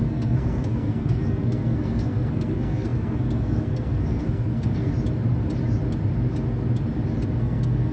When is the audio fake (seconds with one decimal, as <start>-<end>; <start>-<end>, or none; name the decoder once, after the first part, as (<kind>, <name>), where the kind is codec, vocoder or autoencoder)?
0.0-4.9 (codec, SNAC); 7.4-7.9